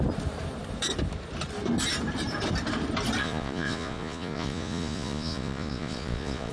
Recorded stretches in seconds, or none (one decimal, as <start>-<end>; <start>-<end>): 0.0-3.2